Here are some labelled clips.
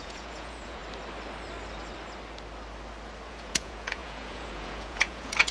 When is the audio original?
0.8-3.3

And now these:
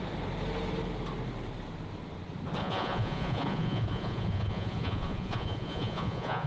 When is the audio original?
0.0-2.6

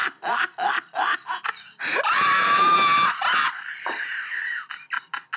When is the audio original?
0.0-5.4

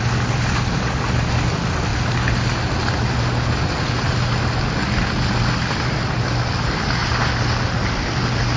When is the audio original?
0.0-8.6

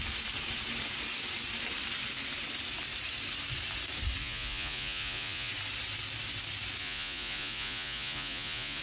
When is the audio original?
0.0-4.2; 5.5-6.8

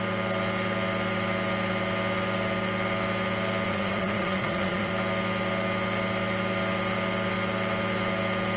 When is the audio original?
0.0-3.7; 4.9-8.6